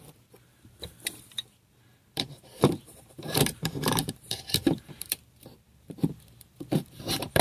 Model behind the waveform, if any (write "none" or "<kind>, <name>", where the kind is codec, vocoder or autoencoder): vocoder, BigVGAN v2